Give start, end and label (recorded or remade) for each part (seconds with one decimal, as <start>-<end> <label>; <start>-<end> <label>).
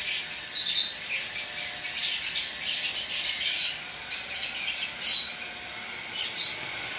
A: 0.0-7.0 recorded